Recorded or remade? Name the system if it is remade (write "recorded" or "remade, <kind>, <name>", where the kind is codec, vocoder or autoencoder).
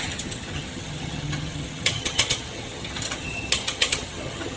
remade, vocoder, HiFi-GAN